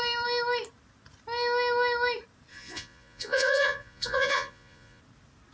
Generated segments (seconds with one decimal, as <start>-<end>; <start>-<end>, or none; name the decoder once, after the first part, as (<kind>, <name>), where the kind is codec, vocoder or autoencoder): 2.5-5.0 (vocoder, Vocos)